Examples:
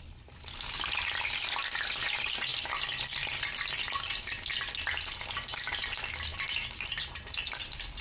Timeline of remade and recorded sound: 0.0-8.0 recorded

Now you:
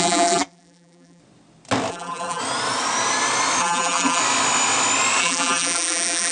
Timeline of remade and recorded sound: 0.0-1.2 remade; 1.2-1.9 recorded; 1.9-2.4 remade; 2.4-3.6 recorded; 3.6-4.2 remade; 4.2-5.2 recorded; 5.2-6.3 remade

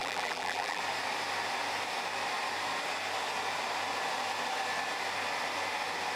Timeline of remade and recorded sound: 0.0-0.8 remade; 0.8-6.2 recorded

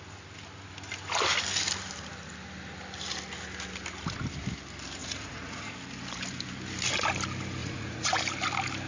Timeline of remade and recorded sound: 0.0-5.0 recorded; 5.0-5.7 remade; 5.7-7.6 recorded; 7.6-8.2 remade; 8.2-8.9 recorded

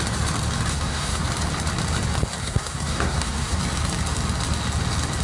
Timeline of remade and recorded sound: 0.0-0.7 recorded; 0.7-1.2 remade; 1.2-2.4 recorded; 2.4-3.6 remade; 3.6-5.2 recorded

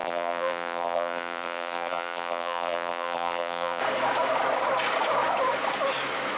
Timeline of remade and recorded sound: 0.0-3.8 remade; 3.8-6.4 recorded

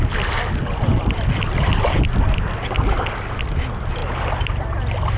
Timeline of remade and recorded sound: 0.0-0.9 recorded; 0.9-1.7 remade; 1.7-4.0 recorded; 4.0-5.2 remade